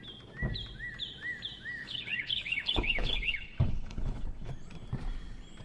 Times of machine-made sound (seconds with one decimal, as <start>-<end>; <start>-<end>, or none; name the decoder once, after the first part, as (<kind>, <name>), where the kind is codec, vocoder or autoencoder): 1.8-4.5 (codec, HILCodec)